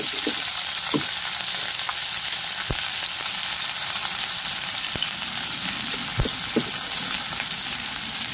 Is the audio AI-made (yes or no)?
no